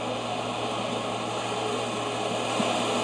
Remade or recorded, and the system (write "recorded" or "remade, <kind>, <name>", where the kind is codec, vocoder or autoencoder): recorded